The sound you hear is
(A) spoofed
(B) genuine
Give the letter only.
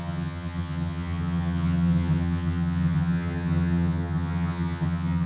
A